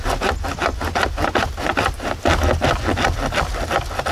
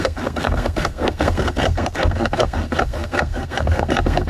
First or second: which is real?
first